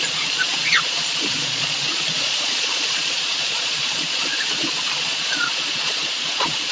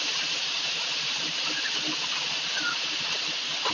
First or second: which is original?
second